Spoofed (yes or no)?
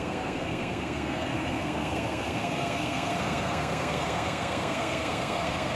yes